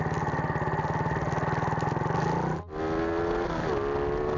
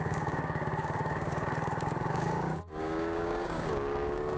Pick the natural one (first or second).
first